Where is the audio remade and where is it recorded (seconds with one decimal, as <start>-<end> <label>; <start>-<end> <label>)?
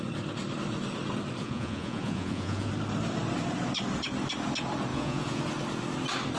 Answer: 0.0-1.4 recorded; 1.4-2.7 remade; 2.7-4.9 recorded; 4.9-5.4 remade; 5.4-6.4 recorded